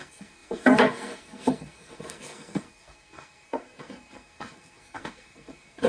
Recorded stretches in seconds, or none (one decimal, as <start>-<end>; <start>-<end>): none